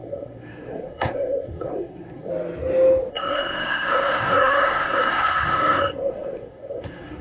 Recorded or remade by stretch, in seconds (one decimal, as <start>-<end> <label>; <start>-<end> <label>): 0.0-2.3 remade; 2.3-3.1 recorded; 3.1-7.2 remade